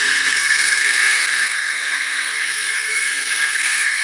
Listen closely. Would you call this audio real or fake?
fake